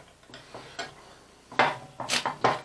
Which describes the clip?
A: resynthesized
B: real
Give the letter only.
B